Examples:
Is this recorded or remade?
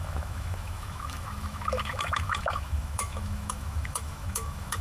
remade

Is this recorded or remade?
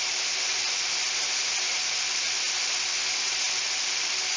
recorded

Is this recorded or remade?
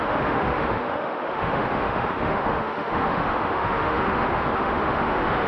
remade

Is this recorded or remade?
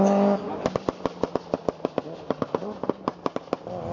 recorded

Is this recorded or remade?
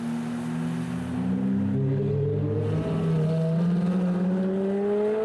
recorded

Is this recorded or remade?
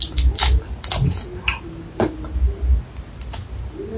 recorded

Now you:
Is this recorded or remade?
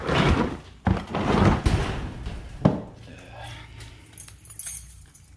recorded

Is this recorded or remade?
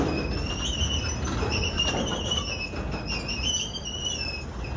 recorded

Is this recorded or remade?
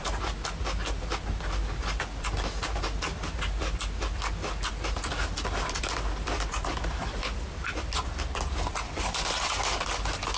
recorded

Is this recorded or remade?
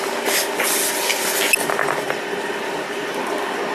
recorded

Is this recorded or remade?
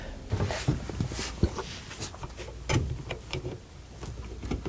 recorded